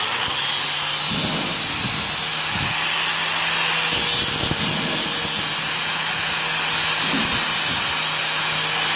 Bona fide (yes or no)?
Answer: yes